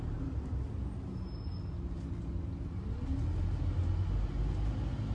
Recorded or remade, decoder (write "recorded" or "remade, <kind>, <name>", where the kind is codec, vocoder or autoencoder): recorded